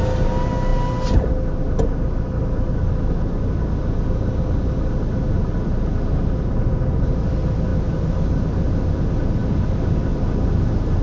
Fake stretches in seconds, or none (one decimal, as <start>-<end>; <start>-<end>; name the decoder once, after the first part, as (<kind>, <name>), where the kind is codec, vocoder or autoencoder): none